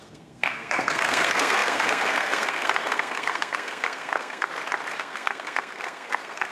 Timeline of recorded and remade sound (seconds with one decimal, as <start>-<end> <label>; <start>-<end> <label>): 0.0-4.5 remade; 4.5-5.0 recorded; 5.0-6.5 remade